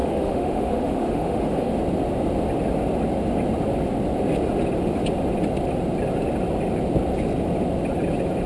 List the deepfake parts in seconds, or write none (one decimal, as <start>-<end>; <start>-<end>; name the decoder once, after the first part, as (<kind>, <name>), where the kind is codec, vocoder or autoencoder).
0.0-1.7 (autoencoder, DAC-VAE)